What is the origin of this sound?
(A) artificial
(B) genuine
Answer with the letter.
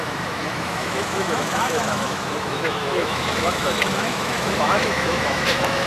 A